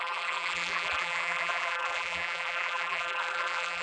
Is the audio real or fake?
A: fake